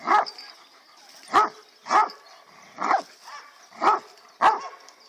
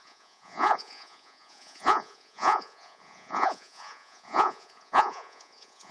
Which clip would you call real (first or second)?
first